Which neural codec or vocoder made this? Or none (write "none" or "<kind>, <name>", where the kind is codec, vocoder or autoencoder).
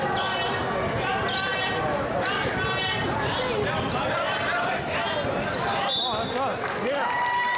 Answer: none